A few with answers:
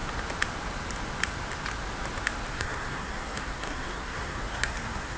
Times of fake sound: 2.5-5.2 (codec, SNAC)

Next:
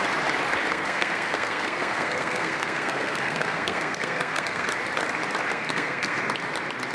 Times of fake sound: 0.7-4.8 (codec, SNAC); 5.5-6.2

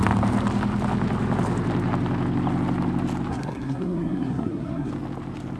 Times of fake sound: 3.3-4.9 (codec, SNAC)

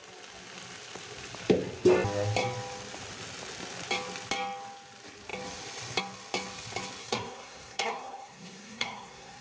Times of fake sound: 7.0-9.4 (codec, SNAC)

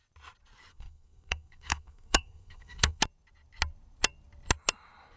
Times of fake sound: 0.7-3.0 (codec, SNAC)

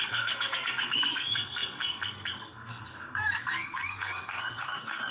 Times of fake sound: 0.0-5.1 (codec, SNAC)

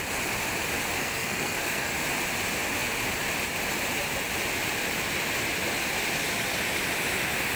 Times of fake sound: 1.0-1.9 (codec, SNAC)